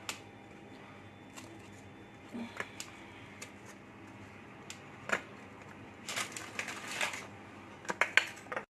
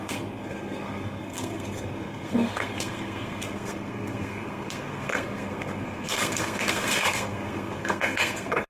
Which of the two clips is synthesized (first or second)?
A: second